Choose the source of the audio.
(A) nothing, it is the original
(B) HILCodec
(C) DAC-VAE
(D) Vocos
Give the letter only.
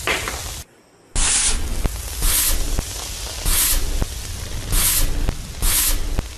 A